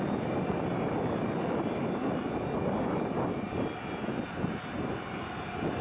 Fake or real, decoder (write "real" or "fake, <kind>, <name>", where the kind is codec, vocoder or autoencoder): real